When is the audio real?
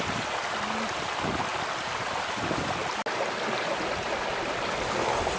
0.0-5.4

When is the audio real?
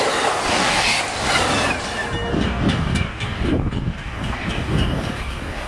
0.0-0.5; 1.0-2.3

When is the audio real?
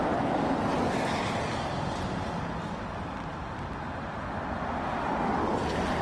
0.0-0.7; 1.2-6.0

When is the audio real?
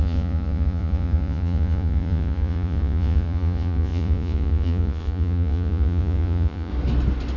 6.7-7.4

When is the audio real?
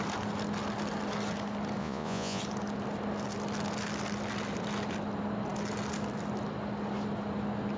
0.0-1.8; 2.4-7.8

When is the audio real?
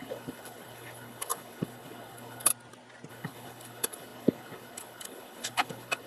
2.5-3.1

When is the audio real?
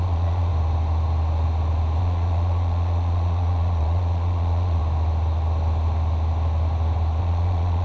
0.5-2.0; 4.8-7.2